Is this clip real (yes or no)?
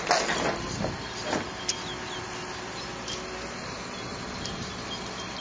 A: yes